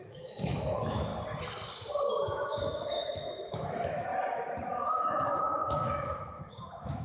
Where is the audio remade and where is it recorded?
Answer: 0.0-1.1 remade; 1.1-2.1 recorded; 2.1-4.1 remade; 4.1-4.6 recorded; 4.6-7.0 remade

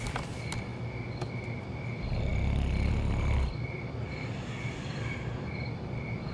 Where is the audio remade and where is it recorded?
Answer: 0.0-6.3 recorded

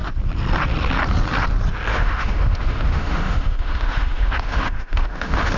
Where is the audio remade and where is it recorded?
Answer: 0.0-1.9 recorded; 1.9-5.6 remade